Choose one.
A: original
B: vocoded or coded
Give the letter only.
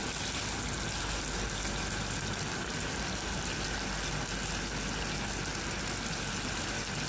A